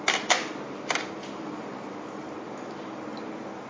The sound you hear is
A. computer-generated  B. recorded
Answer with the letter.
B